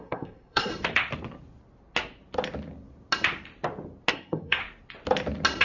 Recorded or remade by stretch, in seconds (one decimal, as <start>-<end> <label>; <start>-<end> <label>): 0.0-0.7 remade; 0.7-4.1 recorded; 4.1-4.6 remade; 4.6-5.6 recorded